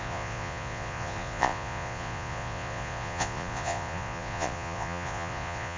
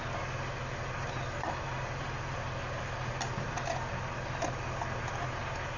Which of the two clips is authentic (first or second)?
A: second